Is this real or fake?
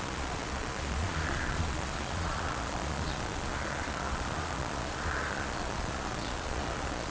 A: fake